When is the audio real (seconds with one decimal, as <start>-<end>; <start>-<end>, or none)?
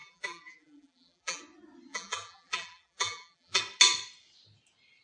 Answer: 1.4-1.9; 3.6-5.0